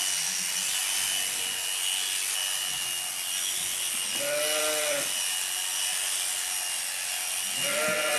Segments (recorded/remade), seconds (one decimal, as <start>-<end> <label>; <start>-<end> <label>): 0.0-8.2 recorded